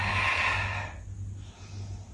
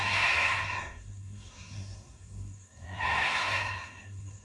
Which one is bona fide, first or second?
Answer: first